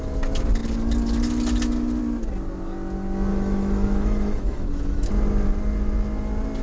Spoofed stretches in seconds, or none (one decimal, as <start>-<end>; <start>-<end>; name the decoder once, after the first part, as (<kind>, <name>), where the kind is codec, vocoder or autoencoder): 3.3-5.1 (autoencoder, DAC-VAE)